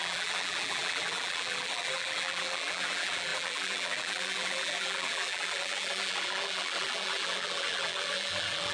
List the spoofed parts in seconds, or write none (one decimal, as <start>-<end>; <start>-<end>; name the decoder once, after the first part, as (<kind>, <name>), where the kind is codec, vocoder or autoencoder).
0.0-8.7 (vocoder, BigVGAN v2)

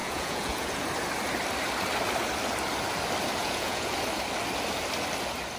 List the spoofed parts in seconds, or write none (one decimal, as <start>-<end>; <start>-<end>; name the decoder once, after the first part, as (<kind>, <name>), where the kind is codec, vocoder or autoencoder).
0.0-0.8 (vocoder, Vocos); 3.4-3.9

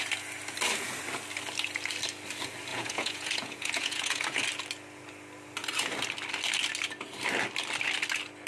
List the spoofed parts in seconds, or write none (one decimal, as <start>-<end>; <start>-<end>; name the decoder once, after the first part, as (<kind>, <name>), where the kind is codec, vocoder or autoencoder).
2.7-4.4 (vocoder, Vocos)

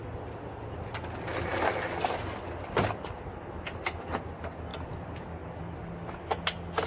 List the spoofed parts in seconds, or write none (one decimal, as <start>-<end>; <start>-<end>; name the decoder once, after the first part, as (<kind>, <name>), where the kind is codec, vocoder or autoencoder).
none

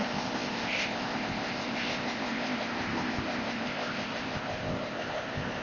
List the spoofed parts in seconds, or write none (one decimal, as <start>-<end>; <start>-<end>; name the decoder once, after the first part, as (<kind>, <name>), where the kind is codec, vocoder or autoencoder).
0.0-5.6 (codec, ZipCodec)

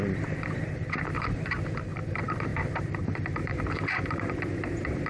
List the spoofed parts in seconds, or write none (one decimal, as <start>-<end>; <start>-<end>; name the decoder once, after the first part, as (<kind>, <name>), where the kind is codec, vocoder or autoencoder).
0.0-5.1 (vocoder, BigVGAN v2)

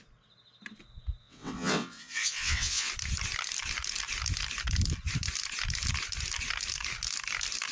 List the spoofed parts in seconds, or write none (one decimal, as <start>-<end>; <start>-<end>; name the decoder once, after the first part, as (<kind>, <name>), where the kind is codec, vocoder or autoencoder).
1.2-2.9 (vocoder, WaveNeXt)